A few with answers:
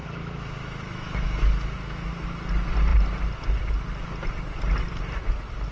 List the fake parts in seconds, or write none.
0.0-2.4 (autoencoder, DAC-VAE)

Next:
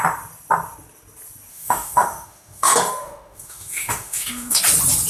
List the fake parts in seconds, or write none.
1.5-4.6 (autoencoder, DAC-VAE)

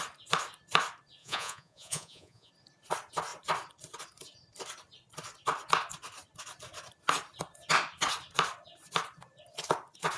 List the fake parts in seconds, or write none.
1.2-2.5 (vocoder, Vocos)

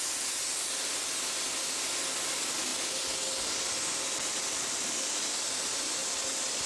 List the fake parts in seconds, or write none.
none

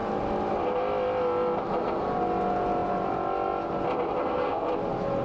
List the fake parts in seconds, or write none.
4.2-4.7 (codec, SNAC)

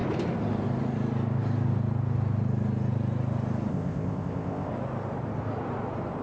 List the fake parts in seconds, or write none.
3.7-4.7 (codec, ZipCodec)

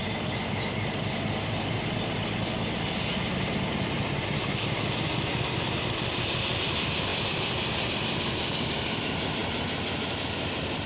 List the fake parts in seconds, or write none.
4.7-10.9 (vocoder, BigVGAN v2)